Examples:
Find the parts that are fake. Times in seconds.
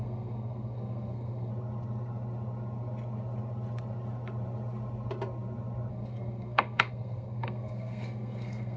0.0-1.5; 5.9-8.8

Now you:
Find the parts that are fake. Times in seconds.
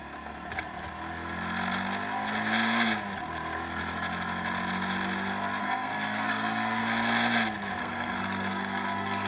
5.6-6.8; 7.8-9.3